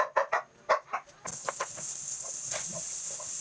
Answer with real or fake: real